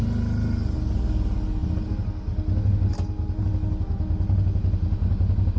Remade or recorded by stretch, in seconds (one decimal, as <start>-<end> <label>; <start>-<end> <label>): 0.0-5.6 recorded